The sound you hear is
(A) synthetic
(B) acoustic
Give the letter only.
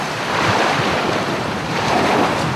A